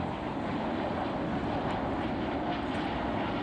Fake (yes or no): no